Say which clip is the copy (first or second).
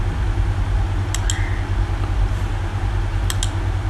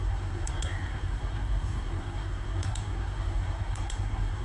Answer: second